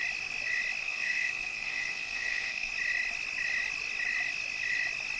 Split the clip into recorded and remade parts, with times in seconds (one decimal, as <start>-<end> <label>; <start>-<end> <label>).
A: 0.0-0.8 recorded; 0.8-2.7 remade; 2.7-5.2 recorded